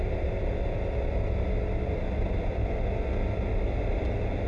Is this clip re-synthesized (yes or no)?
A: no